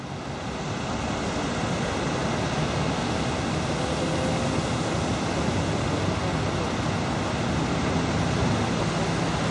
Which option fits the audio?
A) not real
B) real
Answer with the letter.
B